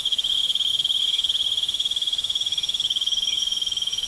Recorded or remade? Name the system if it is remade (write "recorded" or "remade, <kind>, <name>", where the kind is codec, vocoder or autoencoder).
remade, autoencoder, DAC-VAE